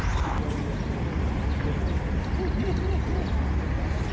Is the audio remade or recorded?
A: recorded